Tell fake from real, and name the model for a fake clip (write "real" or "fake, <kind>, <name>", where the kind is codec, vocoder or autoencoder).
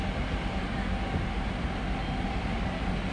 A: real